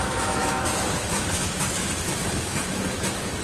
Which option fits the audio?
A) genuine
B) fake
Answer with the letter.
B